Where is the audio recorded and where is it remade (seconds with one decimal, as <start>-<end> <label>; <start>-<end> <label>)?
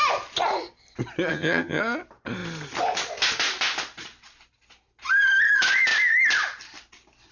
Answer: 0.0-1.3 recorded; 1.3-1.8 remade; 1.8-7.3 recorded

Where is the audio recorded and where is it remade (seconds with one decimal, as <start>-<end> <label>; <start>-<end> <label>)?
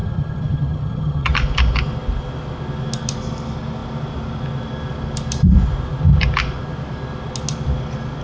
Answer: 0.0-1.3 remade; 1.3-8.2 recorded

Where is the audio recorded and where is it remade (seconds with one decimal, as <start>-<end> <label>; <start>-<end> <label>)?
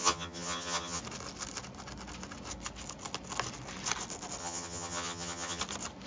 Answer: 0.0-1.0 remade; 1.0-4.4 recorded; 4.4-5.6 remade; 5.6-6.1 recorded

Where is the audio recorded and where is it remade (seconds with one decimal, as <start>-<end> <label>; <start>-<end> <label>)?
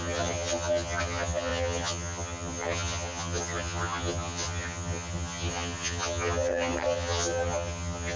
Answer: 0.0-8.2 remade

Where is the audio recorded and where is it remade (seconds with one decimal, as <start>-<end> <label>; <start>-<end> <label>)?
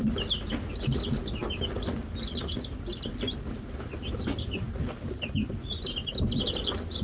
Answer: 0.0-7.0 recorded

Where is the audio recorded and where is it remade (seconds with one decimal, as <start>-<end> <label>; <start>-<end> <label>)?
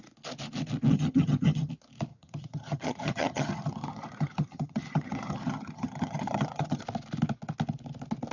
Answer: 0.0-0.9 recorded; 0.9-1.7 remade; 1.7-2.1 recorded; 2.1-6.8 remade; 6.8-8.3 recorded